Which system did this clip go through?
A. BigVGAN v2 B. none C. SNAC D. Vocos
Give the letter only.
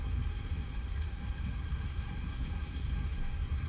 C